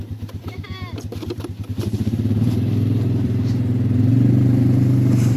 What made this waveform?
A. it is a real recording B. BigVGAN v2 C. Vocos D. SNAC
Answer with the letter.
B